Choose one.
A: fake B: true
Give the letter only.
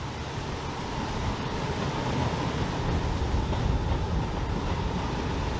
B